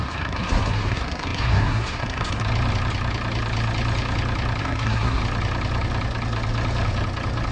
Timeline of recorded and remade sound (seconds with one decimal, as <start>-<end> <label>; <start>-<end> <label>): 0.0-2.4 remade; 2.4-4.6 recorded; 4.6-5.2 remade; 5.2-7.5 recorded